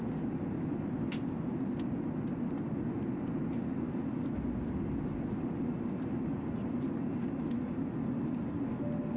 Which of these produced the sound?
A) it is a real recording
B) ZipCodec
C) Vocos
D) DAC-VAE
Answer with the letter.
A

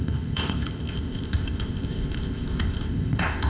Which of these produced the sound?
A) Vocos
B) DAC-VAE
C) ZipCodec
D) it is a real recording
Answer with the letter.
C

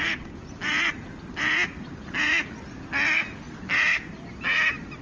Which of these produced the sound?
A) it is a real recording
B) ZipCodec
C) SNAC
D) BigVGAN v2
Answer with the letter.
A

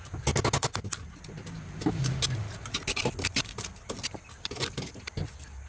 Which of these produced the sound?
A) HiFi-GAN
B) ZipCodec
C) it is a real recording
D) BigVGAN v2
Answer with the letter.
C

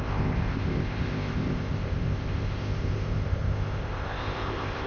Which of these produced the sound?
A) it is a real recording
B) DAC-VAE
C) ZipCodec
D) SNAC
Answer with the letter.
C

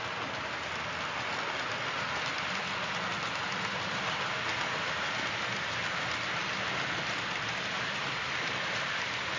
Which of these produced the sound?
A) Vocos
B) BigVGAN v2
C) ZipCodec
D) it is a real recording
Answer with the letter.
D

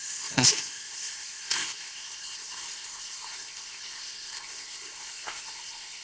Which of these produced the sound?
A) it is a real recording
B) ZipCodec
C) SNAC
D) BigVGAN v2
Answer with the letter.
B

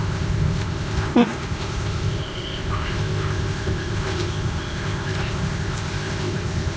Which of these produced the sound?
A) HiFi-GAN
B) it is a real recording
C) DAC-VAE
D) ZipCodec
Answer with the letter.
D